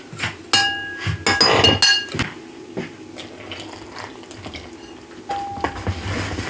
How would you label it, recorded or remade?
recorded